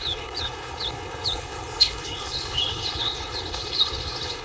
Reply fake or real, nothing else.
fake